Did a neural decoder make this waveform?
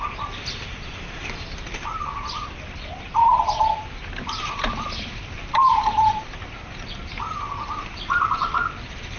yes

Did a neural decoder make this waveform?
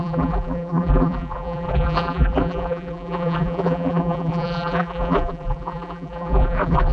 yes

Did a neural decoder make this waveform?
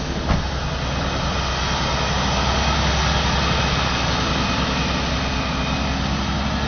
no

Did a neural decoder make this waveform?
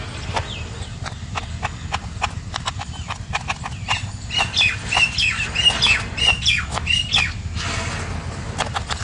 no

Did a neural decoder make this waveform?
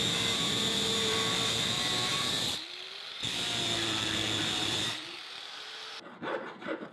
yes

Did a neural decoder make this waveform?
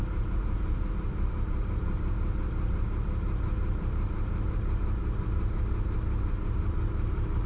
yes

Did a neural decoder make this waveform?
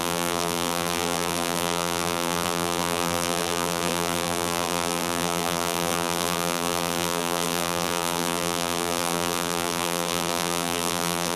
yes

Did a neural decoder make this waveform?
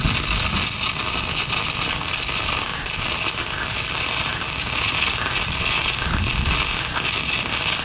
no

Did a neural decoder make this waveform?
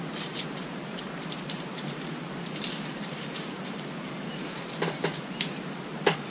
yes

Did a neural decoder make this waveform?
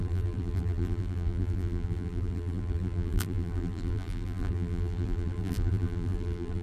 yes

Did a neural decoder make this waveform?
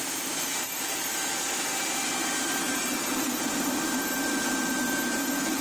yes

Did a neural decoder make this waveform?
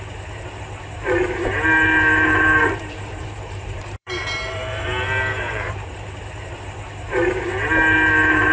yes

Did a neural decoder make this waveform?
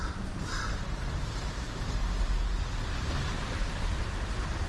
yes